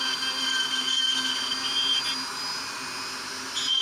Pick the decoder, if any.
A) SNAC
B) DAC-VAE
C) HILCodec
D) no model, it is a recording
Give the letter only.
D